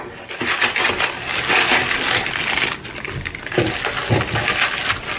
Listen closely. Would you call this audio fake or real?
real